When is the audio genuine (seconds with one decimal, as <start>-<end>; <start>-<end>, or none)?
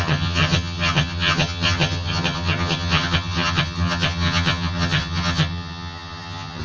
none